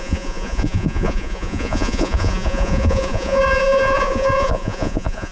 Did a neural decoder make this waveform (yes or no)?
yes